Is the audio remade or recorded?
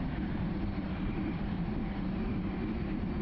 remade